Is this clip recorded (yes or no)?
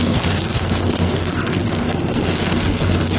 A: no